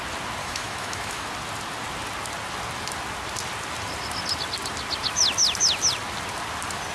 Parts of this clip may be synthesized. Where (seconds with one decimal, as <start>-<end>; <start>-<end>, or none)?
0.4-1.3